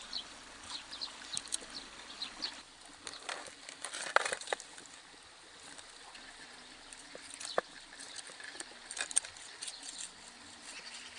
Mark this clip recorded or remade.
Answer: recorded